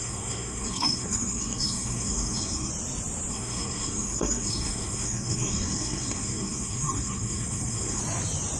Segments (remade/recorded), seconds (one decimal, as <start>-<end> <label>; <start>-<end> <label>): 0.0-2.7 remade; 2.7-3.3 recorded; 3.3-8.0 remade; 8.0-8.6 recorded